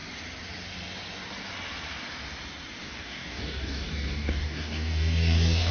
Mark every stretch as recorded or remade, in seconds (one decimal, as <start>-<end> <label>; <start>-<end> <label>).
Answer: 0.0-2.8 recorded; 2.8-5.7 remade